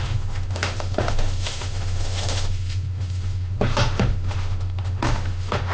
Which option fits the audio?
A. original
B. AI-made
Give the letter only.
B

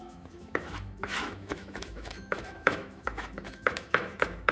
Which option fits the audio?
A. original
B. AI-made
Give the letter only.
B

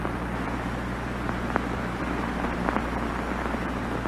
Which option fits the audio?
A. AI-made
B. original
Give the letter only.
B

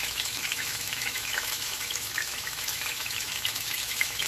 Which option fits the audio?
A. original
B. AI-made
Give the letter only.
B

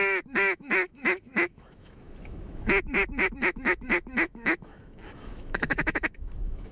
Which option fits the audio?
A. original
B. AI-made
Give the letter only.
B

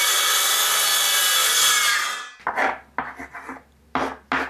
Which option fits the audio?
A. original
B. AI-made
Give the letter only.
A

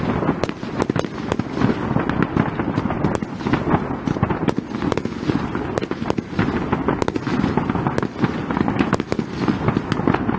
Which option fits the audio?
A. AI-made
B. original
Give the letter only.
B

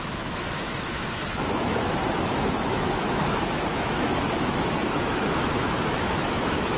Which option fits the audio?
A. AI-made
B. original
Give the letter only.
A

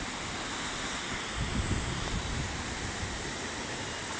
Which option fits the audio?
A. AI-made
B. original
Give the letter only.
B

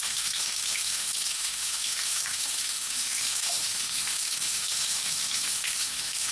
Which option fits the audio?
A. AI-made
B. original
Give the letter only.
A